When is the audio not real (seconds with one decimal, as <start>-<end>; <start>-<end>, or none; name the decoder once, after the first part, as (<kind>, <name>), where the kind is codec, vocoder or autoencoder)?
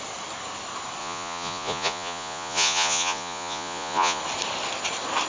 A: 1.0-4.2 (vocoder, Vocos)